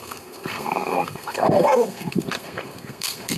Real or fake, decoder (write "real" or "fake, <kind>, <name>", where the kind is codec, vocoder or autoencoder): fake, codec, SNAC